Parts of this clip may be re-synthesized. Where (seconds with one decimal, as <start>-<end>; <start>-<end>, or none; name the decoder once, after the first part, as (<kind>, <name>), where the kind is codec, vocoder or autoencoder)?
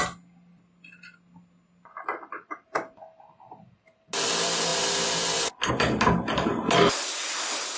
none